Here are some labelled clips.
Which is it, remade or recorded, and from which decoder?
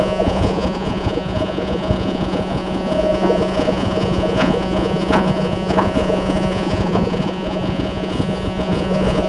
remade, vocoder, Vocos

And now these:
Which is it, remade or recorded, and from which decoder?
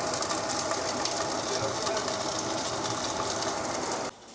recorded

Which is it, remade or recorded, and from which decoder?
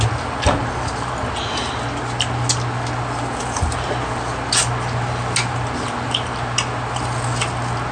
recorded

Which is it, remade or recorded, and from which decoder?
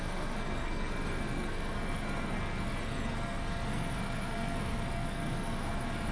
remade, codec, SNAC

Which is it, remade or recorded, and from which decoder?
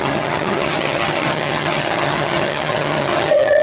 remade, vocoder, HiFi-GAN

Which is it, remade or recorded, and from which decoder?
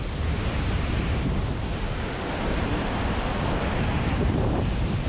remade, vocoder, BigVGAN v2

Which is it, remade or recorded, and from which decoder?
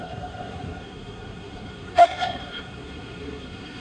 remade, codec, SNAC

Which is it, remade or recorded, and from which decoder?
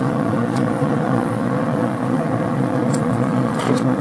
remade, vocoder, Vocos